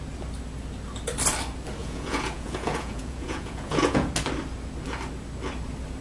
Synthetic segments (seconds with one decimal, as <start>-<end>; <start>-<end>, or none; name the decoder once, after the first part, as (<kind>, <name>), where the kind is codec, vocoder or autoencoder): 1.8-4.1 (vocoder, Vocos)